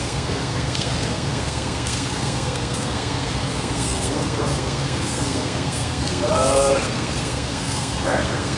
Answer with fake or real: fake